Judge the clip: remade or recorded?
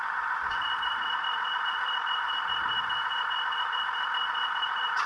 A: remade